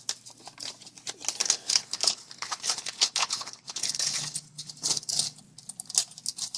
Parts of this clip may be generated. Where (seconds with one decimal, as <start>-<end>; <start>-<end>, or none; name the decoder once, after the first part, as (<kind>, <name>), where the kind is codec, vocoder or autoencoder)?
1.4-5.4 (codec, HILCodec)